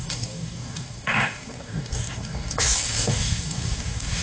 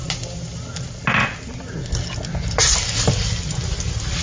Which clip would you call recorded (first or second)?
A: second